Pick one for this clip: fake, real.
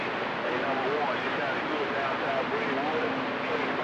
real